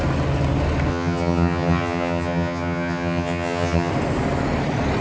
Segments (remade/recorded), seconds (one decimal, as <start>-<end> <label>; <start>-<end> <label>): 0.0-0.9 recorded; 0.9-3.9 remade; 3.9-5.0 recorded